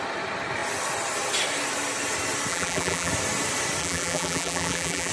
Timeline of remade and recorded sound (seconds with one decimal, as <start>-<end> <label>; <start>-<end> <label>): 0.0-2.5 recorded; 2.5-3.1 remade; 3.1-3.8 recorded; 3.8-5.1 remade